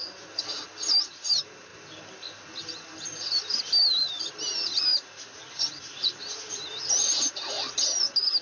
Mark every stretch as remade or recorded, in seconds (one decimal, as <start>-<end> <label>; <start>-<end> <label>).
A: 0.0-4.9 recorded; 4.9-6.2 remade; 6.2-8.4 recorded